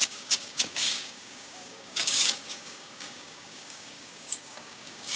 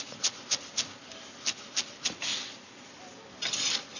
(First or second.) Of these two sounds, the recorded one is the second